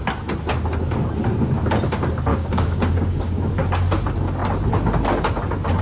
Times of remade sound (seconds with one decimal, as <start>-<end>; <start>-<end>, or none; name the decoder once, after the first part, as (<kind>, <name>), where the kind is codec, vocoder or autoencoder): 2.3-3.5 (codec, DAC)